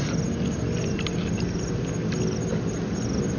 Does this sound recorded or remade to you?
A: recorded